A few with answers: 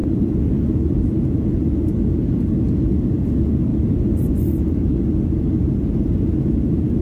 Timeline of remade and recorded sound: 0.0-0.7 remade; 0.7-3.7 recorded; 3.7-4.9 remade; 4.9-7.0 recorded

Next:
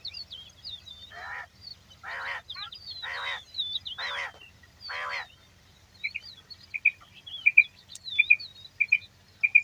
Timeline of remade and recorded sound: 0.0-9.6 recorded

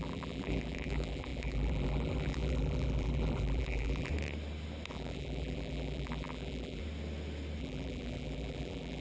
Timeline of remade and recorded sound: 0.0-4.1 remade; 4.1-4.9 recorded; 4.9-6.8 remade; 6.8-7.6 recorded; 7.6-9.0 remade